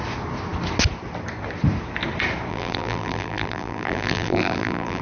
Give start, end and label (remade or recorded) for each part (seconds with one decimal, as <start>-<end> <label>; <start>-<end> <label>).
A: 0.0-2.5 recorded; 2.5-5.0 remade

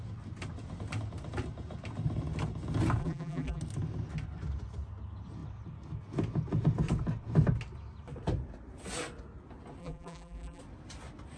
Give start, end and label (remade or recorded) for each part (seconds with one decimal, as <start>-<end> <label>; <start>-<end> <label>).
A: 0.0-3.0 recorded; 3.0-3.6 remade; 3.6-9.8 recorded; 9.8-10.6 remade; 10.6-11.4 recorded

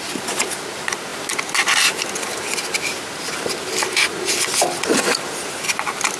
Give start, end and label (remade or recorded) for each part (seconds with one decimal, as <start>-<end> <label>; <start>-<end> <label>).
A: 0.0-6.2 recorded

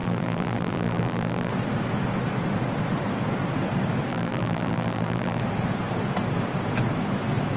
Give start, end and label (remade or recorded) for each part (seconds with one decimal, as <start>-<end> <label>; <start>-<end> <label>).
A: 0.0-1.5 remade; 1.5-4.1 recorded; 4.1-5.4 remade; 5.4-7.6 recorded